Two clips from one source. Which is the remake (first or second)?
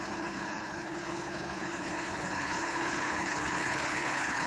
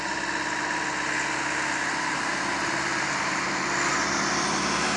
first